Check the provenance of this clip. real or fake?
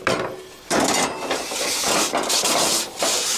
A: real